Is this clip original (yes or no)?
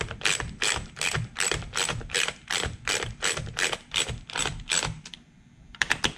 no